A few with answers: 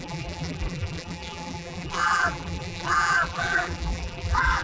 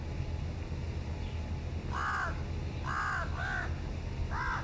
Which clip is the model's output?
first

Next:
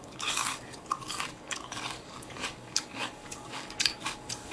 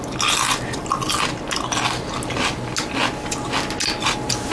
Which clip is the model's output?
first